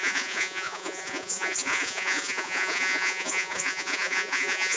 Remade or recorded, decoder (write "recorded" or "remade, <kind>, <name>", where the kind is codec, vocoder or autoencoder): remade, vocoder, Vocos